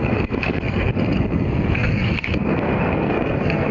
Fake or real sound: fake